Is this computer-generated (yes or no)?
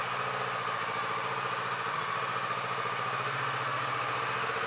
no